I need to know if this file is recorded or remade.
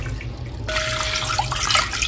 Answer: recorded